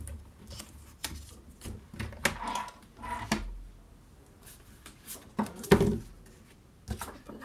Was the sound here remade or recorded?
recorded